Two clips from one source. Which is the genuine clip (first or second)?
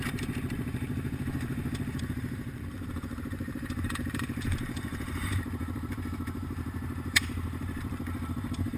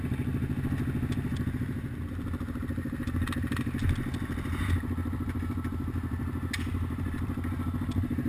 second